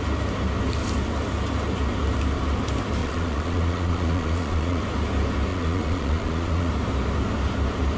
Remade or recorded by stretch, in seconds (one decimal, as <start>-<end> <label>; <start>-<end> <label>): 0.0-3.0 recorded; 3.0-4.8 remade; 4.8-5.5 recorded; 5.5-6.7 remade; 6.7-8.0 recorded